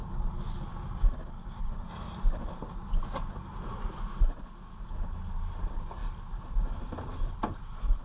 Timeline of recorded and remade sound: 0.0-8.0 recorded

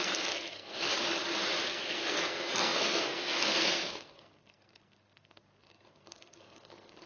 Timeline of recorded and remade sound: 0.0-0.9 remade; 0.9-1.7 recorded; 1.7-7.1 remade

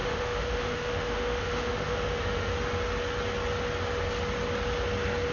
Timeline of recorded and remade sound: 0.0-2.5 remade; 2.5-5.3 recorded

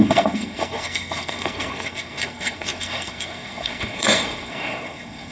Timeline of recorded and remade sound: 0.0-5.3 remade

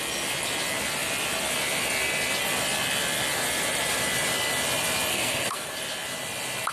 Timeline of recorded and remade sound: 0.0-5.1 recorded; 5.1-5.7 remade; 5.7-6.7 recorded